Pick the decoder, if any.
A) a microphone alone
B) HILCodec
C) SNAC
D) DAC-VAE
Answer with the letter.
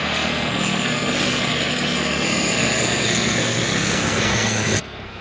C